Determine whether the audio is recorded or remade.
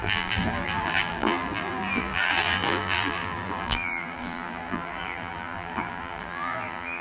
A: remade